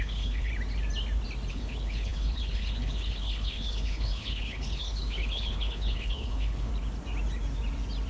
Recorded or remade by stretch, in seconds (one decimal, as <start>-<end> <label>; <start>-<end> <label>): 0.0-0.5 remade; 0.5-1.5 recorded; 1.5-6.7 remade; 6.7-8.1 recorded